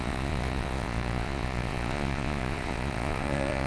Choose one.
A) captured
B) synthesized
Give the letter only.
B